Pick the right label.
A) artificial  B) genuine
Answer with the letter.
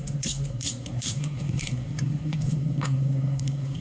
A